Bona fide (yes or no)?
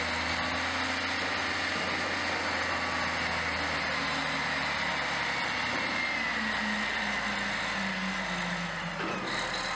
yes